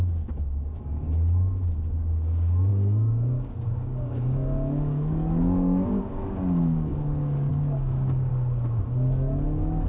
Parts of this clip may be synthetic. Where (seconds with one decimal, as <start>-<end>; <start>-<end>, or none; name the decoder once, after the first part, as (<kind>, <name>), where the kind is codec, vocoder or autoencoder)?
0.0-8.3 (codec, DAC)